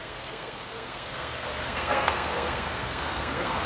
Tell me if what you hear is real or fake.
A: fake